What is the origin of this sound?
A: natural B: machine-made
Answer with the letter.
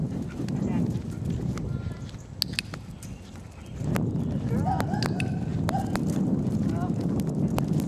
A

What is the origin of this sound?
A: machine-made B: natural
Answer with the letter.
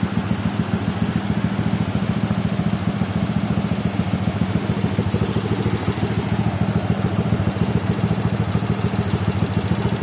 B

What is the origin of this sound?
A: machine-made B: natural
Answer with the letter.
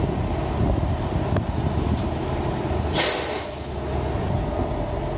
B